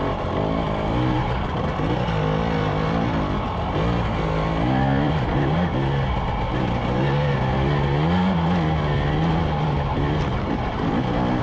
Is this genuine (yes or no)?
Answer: yes